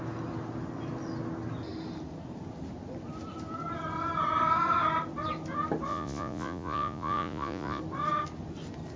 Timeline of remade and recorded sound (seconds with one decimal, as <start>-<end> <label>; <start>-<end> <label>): 0.0-5.9 recorded; 5.9-7.8 remade; 7.8-9.0 recorded